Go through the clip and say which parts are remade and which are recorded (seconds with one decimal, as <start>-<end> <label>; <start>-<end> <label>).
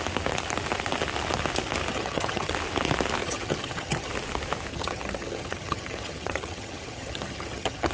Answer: 0.0-1.9 recorded; 1.9-2.5 remade; 2.5-3.2 recorded; 3.2-4.1 remade; 4.1-4.7 recorded; 4.7-7.9 remade